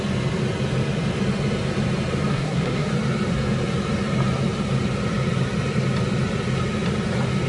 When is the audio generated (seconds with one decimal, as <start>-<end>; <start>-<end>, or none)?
2.3-2.9